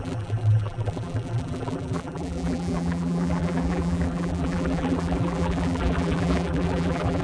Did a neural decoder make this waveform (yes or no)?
yes